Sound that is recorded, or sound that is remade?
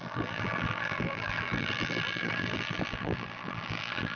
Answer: remade